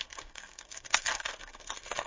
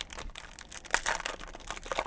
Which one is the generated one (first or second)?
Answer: first